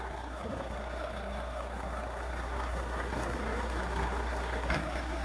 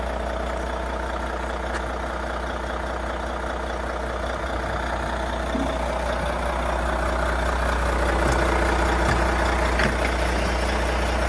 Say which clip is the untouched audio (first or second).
second